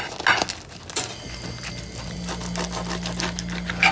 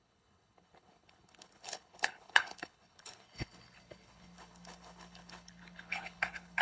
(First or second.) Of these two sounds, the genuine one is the first